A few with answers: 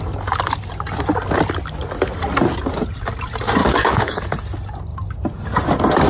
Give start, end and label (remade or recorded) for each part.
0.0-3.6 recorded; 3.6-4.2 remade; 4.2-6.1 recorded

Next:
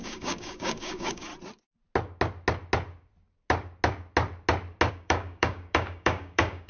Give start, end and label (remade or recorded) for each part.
0.0-1.3 remade; 1.3-4.9 recorded; 4.9-6.7 remade

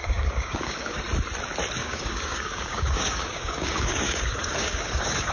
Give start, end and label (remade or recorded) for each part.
0.0-1.0 remade; 1.0-1.8 recorded; 1.8-5.3 remade

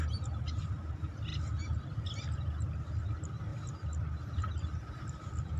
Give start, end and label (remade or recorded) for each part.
0.0-5.6 recorded

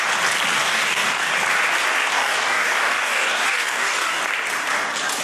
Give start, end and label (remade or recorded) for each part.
0.0-0.6 recorded; 0.6-1.3 remade; 1.3-2.1 recorded; 2.1-4.2 remade; 4.2-5.2 recorded

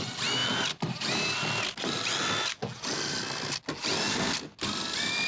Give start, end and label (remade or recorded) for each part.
0.0-5.3 recorded

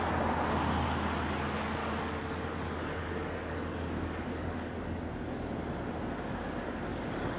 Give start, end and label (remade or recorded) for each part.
0.0-1.8 recorded; 1.8-5.0 remade; 5.0-6.9 recorded; 6.9-7.4 remade